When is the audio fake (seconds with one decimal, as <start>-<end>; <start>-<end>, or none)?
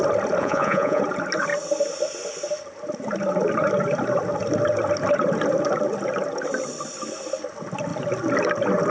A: 0.4-1.0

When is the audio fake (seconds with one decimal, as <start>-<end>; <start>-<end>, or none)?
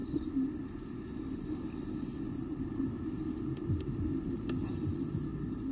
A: none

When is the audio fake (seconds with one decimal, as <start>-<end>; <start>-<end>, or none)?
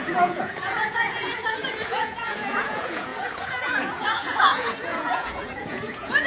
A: 0.0-6.3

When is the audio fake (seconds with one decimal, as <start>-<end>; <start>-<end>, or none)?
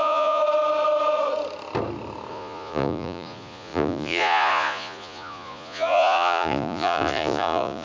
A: 0.0-0.4; 2.3-7.8